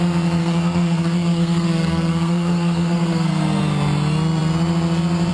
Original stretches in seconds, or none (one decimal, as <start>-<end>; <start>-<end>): 0.0-0.4; 3.6-5.3